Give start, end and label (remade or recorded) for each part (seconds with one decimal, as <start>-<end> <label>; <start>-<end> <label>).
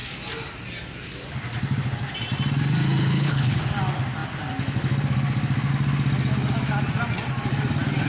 0.0-3.0 recorded; 3.0-3.6 remade; 3.6-8.1 recorded